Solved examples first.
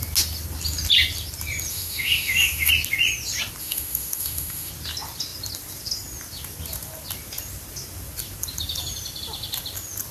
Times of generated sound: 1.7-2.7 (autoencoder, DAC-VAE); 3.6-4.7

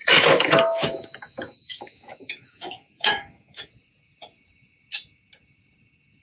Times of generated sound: 0.0-3.7 (autoencoder, DAC-VAE)

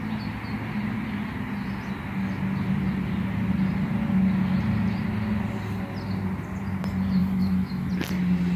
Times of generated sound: 7.2-7.9 (autoencoder, DAC-VAE)

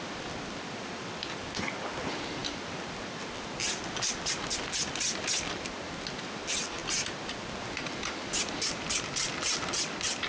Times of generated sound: none

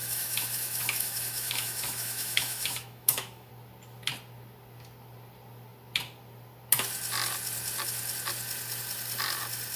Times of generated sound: 0.0-3.5 (autoencoder, DAC-VAE)

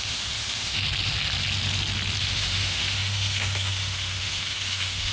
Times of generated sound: 0.0-0.8 (autoencoder, DAC-VAE); 2.2-5.1

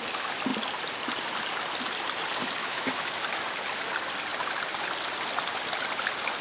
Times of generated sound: 2.6-3.1 (autoencoder, DAC-VAE)

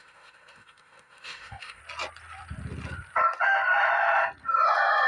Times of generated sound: 0.0-1.8 (autoencoder, DAC-VAE)